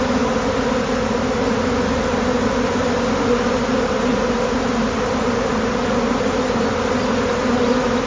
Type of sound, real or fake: real